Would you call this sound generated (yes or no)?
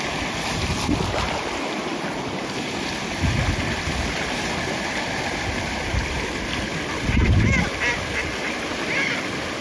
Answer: no